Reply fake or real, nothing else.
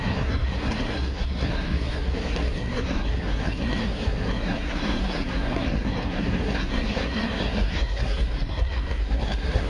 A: fake